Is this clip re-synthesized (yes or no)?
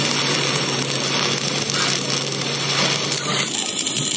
no